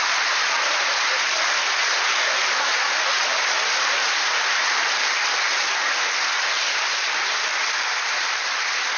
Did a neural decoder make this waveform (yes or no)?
no